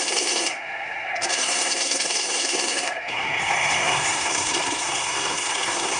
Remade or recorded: remade